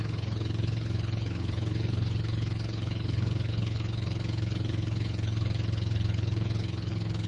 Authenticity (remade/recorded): remade